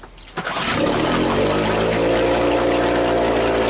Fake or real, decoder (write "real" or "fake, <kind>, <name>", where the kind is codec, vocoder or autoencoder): real